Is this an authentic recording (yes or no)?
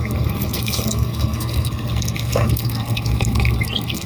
no